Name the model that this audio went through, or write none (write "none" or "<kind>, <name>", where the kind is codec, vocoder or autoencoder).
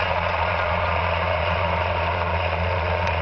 vocoder, Vocos